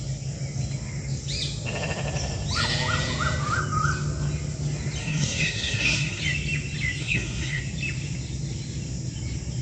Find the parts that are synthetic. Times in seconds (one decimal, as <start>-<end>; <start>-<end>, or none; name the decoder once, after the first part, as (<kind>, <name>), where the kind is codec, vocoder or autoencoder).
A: 5.0-6.2 (codec, SNAC); 7.0-7.6